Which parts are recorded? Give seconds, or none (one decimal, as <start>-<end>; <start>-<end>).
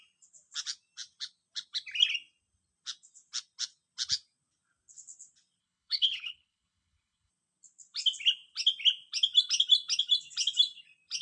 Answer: 0.0-5.6; 7.3-11.2